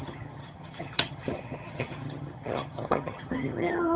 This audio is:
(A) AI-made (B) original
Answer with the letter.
A